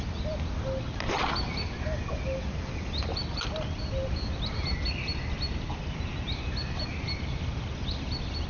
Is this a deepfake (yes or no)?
no